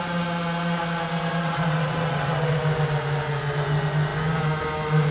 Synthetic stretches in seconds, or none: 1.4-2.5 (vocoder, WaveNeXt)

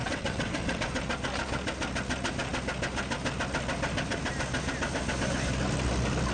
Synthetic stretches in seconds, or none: 0.0-0.8 (vocoder, WaveNeXt)